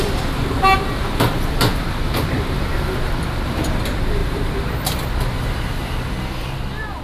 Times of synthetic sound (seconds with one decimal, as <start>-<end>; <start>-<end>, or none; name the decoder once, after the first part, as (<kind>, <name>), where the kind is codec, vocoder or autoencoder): 1.7-3.1 (vocoder, BigVGAN v2); 4.2-5.8

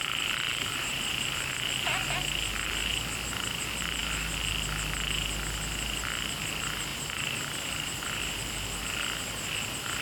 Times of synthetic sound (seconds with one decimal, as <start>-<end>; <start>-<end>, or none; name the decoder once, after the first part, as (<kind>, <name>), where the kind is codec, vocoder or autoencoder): 0.5-1.5 (vocoder, BigVGAN v2); 6.9-8.8

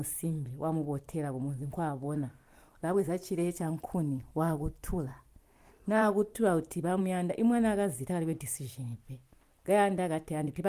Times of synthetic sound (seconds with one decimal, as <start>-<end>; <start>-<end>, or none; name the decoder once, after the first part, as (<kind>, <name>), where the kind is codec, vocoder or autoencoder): 2.3-7.0 (vocoder, BigVGAN v2)

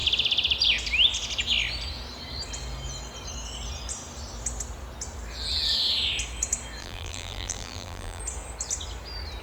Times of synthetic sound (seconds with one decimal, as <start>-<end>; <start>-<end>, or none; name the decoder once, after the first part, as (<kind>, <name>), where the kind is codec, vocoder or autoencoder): 6.8-8.2 (vocoder, BigVGAN v2)

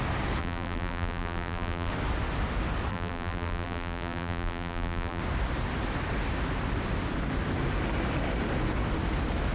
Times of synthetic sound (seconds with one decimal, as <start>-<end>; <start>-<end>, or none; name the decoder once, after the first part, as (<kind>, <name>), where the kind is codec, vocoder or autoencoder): 0.4-1.9 (vocoder, BigVGAN v2); 2.9-5.2